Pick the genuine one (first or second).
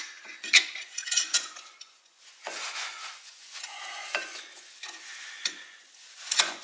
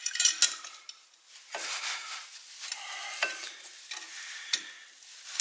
second